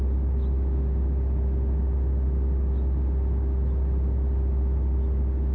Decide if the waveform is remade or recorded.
recorded